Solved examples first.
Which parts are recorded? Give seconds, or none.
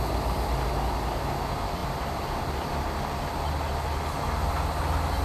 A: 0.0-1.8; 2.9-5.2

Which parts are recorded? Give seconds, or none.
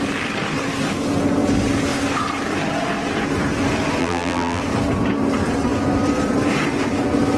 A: 0.0-4.0; 4.6-7.4